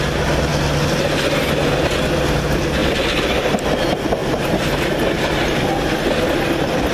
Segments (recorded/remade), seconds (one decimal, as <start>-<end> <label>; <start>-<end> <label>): 0.0-4.2 recorded; 4.2-4.9 remade; 4.9-6.9 recorded